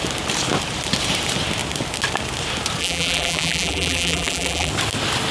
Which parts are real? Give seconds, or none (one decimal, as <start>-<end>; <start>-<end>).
0.0-2.8; 4.7-5.3